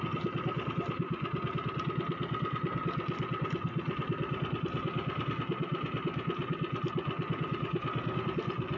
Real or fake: real